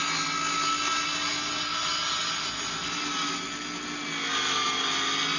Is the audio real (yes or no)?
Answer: yes